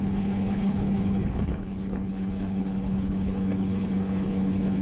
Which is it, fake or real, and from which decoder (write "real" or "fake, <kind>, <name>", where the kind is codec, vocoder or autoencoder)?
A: fake, codec, HILCodec